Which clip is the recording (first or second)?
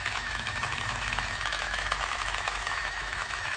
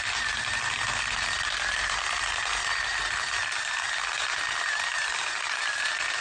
second